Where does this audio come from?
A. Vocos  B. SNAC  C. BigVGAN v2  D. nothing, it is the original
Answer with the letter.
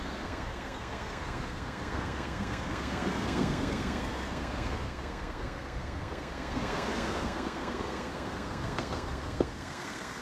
B